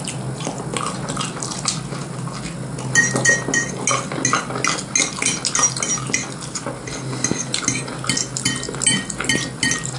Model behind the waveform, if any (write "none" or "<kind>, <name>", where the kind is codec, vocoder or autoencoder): none